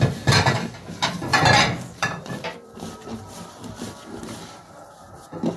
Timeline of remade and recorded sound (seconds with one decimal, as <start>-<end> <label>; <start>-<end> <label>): 0.0-1.3 recorded; 1.3-4.7 remade; 4.7-5.6 recorded

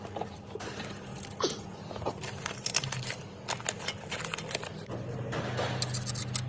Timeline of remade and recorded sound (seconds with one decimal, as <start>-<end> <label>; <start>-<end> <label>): 0.0-1.1 recorded; 1.1-2.1 remade; 2.1-6.5 recorded